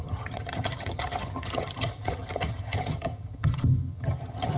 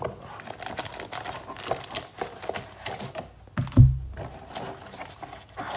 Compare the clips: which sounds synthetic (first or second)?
first